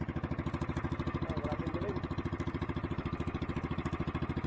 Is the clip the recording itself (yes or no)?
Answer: yes